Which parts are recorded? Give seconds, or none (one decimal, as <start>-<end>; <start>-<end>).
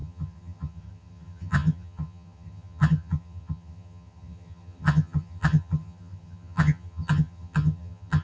none